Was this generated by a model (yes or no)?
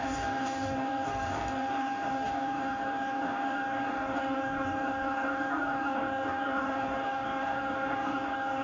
yes